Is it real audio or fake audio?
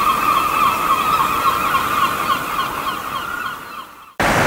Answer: real